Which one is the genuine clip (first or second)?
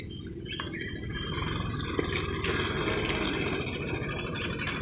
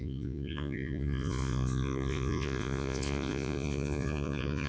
first